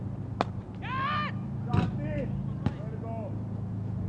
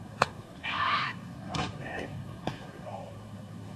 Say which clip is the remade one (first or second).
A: second